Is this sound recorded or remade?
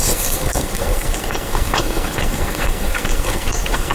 remade